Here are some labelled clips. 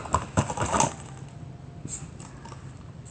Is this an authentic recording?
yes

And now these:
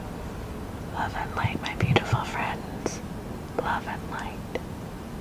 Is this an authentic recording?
yes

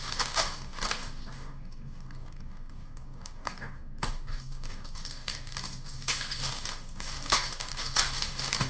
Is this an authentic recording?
no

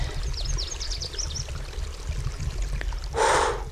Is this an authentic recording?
yes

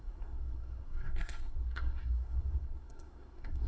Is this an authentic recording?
no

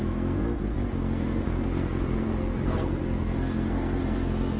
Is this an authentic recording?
no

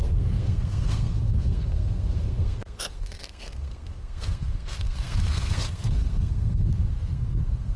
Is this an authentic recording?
no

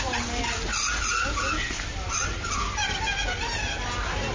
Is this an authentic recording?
yes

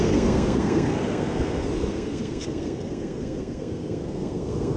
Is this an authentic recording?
no